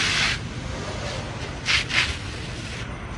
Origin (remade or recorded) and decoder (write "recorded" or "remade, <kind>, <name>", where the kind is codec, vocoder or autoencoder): recorded